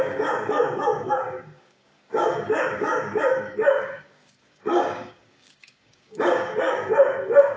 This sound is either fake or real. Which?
fake